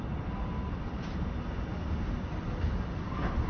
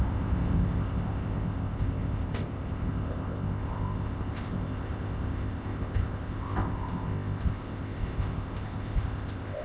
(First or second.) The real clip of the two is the first